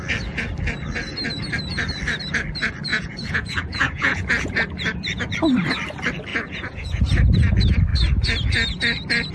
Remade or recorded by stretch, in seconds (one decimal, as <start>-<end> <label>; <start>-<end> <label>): 0.0-2.9 recorded; 2.9-4.5 remade; 4.5-6.3 recorded; 6.3-7.0 remade; 7.0-9.3 recorded